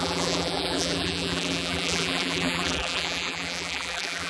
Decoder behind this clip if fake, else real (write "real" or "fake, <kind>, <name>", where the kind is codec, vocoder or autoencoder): fake, vocoder, BigVGAN v2